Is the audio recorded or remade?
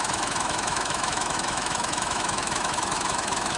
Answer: remade